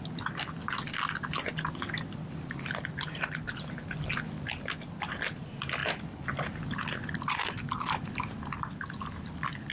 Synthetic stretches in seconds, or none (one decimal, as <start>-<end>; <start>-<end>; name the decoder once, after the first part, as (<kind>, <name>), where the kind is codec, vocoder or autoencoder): none